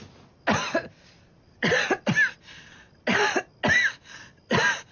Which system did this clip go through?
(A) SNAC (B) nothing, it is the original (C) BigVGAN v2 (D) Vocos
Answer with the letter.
B